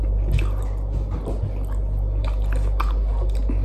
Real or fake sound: real